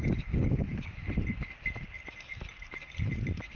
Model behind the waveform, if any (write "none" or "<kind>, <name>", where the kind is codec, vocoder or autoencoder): none